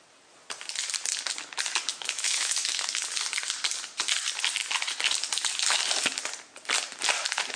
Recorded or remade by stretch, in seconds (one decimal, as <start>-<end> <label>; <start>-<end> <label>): 0.0-1.9 recorded; 1.9-2.9 remade; 2.9-7.6 recorded